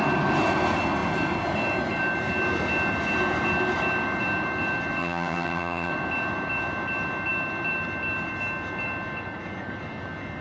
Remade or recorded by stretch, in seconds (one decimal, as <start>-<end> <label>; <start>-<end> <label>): 0.0-5.0 recorded; 5.0-5.9 remade; 5.9-10.4 recorded

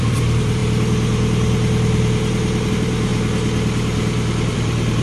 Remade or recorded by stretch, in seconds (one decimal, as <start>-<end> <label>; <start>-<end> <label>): 0.0-0.6 remade; 0.6-2.7 recorded; 2.7-3.1 remade; 3.1-4.5 recorded; 4.5-5.0 remade